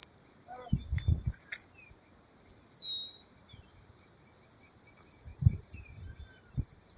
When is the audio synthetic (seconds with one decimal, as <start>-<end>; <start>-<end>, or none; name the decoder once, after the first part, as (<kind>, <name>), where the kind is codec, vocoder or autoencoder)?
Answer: 5.3-7.0 (vocoder, BigVGAN v2)